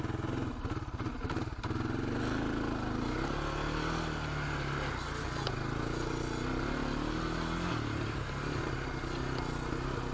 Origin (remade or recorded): recorded